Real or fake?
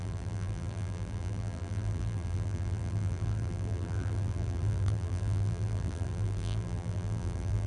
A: fake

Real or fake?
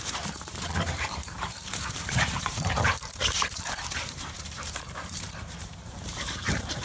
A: fake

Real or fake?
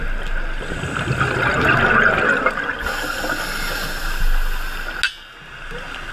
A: real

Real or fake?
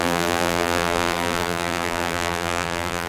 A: fake